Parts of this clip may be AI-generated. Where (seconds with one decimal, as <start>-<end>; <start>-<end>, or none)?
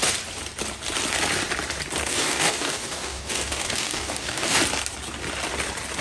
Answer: 2.0-4.6